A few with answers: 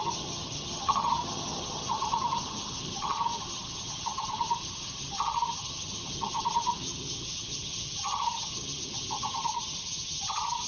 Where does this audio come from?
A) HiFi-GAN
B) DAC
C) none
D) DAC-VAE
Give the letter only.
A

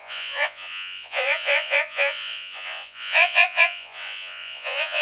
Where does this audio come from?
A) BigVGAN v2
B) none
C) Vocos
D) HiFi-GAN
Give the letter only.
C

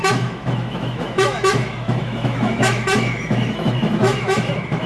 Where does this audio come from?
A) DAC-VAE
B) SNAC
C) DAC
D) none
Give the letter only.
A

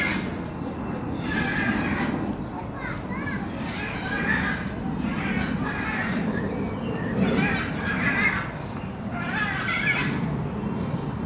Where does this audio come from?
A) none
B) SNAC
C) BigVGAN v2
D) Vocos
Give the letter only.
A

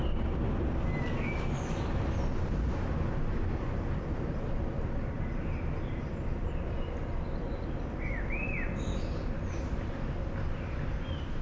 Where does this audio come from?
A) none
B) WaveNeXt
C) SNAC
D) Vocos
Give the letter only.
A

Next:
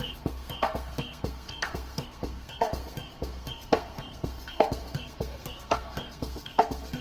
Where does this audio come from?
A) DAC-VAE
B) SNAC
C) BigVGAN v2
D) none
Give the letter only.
B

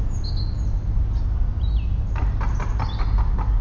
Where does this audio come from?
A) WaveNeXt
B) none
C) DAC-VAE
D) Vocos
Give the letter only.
B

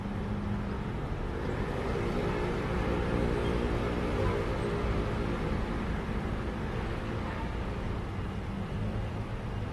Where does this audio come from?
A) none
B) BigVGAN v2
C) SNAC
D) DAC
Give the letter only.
A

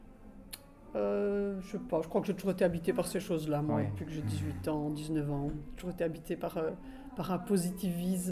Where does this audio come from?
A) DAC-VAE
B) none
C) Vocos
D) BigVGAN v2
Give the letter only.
B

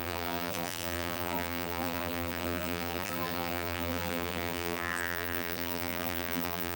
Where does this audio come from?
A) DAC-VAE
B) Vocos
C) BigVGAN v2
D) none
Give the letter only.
C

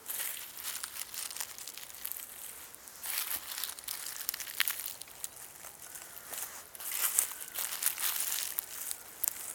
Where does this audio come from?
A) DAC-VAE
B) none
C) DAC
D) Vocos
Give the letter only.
B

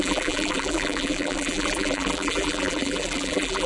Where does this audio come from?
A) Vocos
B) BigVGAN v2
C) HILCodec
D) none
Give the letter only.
B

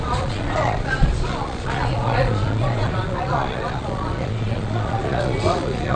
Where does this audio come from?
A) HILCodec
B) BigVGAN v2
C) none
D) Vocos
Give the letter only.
D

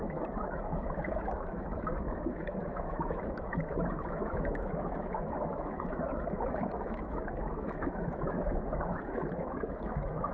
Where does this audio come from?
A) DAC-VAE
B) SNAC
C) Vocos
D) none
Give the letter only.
A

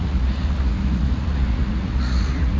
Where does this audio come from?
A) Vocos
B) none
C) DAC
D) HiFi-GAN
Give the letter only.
A